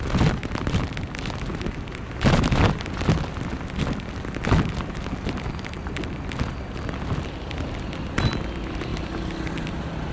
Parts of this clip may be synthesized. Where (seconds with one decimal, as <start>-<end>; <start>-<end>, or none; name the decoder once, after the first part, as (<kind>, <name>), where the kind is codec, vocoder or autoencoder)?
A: none